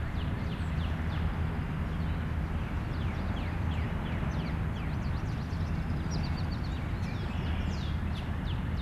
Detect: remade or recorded recorded